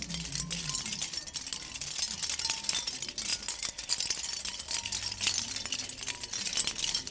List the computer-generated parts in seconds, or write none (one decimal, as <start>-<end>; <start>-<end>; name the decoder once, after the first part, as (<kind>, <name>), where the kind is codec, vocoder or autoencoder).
none